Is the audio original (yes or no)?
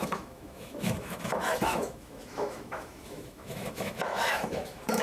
no